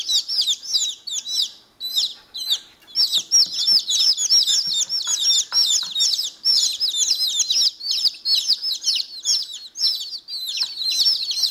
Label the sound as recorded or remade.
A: recorded